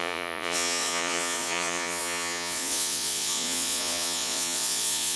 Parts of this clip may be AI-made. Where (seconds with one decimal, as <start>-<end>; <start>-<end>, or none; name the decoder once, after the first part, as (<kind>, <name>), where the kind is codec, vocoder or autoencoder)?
0.0-5.2 (vocoder, Vocos)